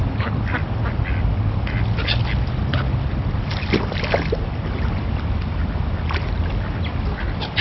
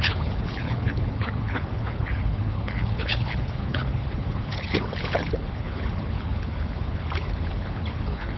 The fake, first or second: second